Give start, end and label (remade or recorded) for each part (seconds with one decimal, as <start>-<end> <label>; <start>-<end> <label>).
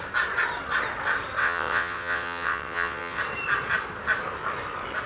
0.0-1.4 recorded; 1.4-3.2 remade; 3.2-5.1 recorded